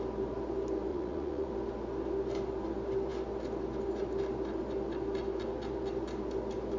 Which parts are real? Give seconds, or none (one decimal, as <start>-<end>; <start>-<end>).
0.0-0.9; 1.5-6.8